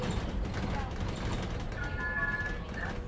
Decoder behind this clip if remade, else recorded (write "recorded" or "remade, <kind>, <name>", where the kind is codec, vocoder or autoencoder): recorded